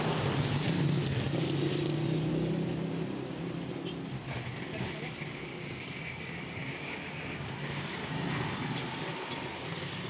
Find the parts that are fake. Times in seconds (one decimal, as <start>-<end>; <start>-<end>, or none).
2.3-3.4; 5.5-8.3